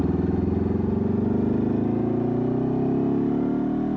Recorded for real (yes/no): yes